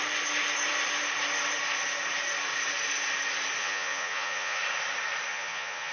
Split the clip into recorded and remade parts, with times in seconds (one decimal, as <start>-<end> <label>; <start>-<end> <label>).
0.0-3.6 recorded; 3.6-4.6 remade; 4.6-5.3 recorded; 5.3-5.9 remade